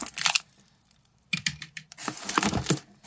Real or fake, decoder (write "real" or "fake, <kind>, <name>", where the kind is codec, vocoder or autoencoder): real